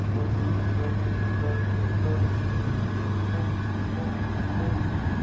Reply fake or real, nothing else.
real